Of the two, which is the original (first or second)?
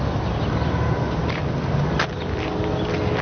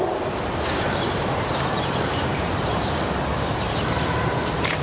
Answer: first